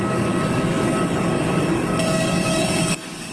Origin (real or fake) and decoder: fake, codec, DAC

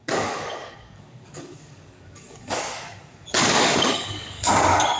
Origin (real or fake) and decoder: fake, codec, DAC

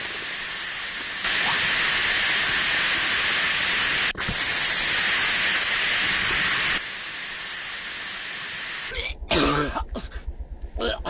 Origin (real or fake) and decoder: real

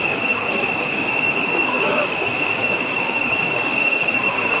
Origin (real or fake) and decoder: fake, codec, DAC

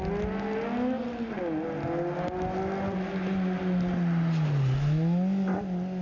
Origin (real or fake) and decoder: real